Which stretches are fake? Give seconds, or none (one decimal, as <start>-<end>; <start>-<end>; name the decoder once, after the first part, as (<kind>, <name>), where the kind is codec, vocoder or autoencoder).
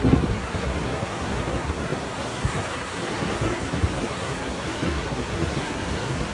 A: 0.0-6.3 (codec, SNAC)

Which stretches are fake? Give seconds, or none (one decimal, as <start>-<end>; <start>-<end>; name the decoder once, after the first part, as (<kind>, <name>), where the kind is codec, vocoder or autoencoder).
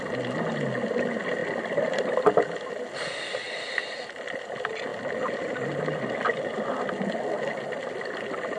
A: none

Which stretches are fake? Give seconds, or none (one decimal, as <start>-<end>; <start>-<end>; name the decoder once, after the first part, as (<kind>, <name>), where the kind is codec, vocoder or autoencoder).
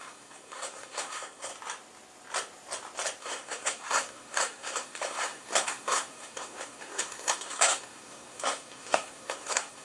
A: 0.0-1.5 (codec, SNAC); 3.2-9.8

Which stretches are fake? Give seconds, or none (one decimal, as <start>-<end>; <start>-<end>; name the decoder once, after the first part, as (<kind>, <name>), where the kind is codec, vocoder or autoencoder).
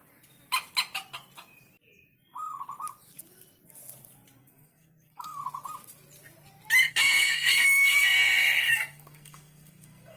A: 4.4-5.4 (codec, SNAC); 6.9-10.2